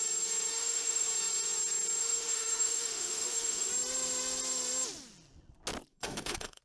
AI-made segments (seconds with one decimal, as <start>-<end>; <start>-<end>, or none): 0.5-1.1; 2.0-3.7; 5.9-6.6